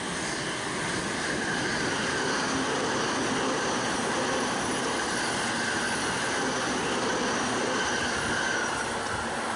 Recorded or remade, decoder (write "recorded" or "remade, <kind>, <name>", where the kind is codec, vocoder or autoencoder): recorded